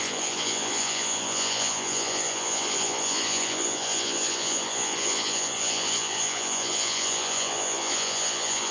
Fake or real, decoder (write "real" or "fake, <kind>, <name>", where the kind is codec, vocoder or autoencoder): fake, vocoder, Vocos